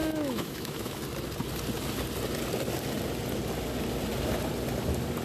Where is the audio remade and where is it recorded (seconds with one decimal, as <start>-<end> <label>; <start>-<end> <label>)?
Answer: 0.0-1.0 remade; 1.0-5.2 recorded